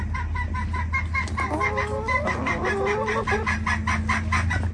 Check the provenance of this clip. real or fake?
real